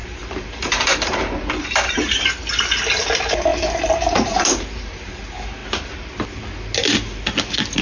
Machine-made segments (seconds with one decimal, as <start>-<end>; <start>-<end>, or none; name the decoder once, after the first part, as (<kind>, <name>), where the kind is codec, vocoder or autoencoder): 0.0-2.2 (vocoder, BigVGAN v2); 3.5-5.1